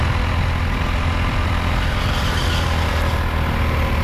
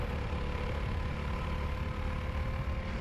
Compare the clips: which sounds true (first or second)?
first